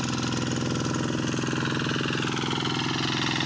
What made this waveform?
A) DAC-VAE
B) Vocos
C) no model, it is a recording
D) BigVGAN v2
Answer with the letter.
C